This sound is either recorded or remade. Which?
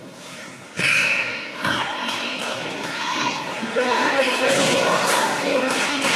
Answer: remade